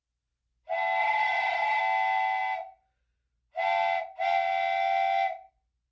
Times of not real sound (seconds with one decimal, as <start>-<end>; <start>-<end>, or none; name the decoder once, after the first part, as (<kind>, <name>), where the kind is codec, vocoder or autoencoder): 1.0-1.8 (vocoder, HiFi-GAN)